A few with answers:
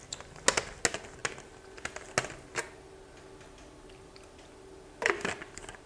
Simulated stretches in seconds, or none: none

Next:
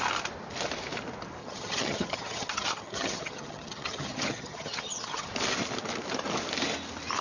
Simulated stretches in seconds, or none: 1.4-5.3 (vocoder, HiFi-GAN)

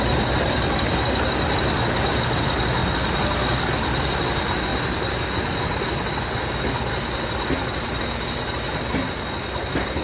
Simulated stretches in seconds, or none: none

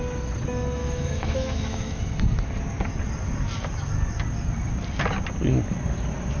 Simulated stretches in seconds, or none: 0.8-2.0 (autoencoder, DAC-VAE)

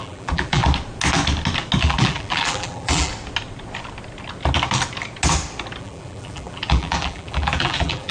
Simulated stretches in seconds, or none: 0.0-0.6 (vocoder, BigVGAN v2); 1.8-3.1; 5.8-8.1

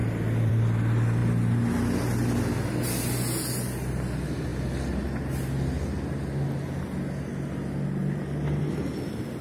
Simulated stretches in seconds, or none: 0.0-0.5 (vocoder, BigVGAN v2)

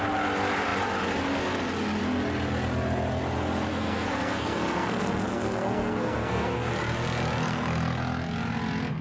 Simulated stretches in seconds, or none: 3.7-6.7 (codec, SNAC); 7.4-8.0

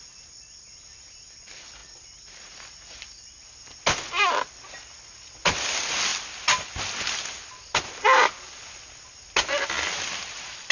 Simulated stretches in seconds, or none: none